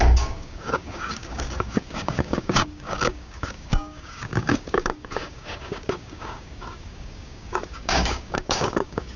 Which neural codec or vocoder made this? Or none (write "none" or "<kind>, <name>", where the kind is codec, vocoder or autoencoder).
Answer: codec, DAC